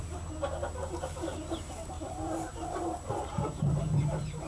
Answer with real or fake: real